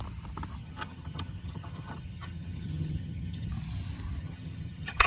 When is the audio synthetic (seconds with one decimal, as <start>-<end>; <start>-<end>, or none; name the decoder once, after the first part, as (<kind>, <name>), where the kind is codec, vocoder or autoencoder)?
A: 0.6-3.5 (vocoder, HiFi-GAN); 4.2-5.1